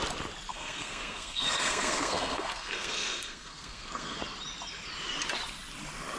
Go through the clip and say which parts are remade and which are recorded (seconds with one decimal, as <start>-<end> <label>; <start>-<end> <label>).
0.0-0.5 recorded; 0.5-4.2 remade; 4.2-6.2 recorded